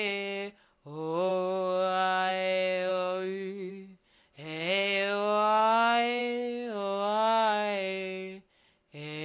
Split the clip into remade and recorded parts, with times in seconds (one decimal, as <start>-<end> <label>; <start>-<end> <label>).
0.0-2.9 recorded; 2.9-3.7 remade; 3.7-5.6 recorded; 5.6-6.2 remade; 6.2-9.2 recorded